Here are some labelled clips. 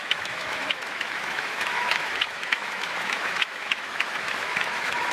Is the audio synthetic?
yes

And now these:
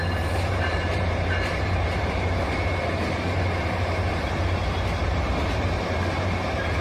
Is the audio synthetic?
yes